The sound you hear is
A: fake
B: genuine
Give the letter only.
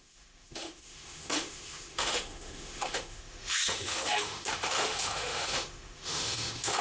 A